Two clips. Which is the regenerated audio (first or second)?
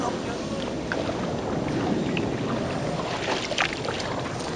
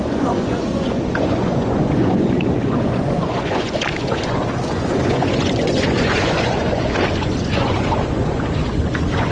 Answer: second